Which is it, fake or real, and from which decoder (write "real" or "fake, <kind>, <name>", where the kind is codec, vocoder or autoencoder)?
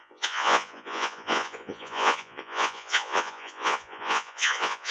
fake, vocoder, Vocos